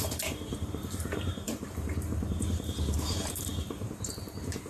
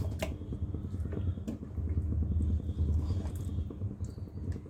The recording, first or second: second